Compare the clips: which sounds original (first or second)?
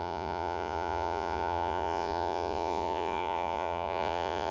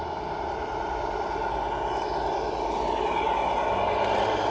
second